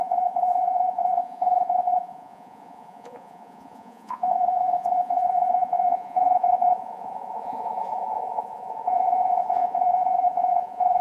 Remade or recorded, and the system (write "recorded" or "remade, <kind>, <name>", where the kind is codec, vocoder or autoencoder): remade, vocoder, Vocos